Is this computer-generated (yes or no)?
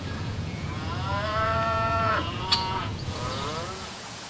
yes